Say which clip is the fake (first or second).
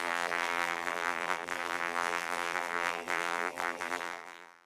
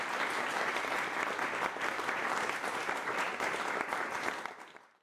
first